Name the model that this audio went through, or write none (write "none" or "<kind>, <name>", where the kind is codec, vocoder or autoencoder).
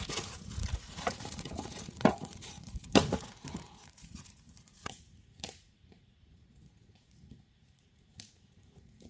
vocoder, Vocos